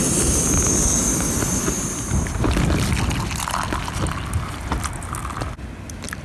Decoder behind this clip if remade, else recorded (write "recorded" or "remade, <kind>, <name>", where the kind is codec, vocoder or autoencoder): recorded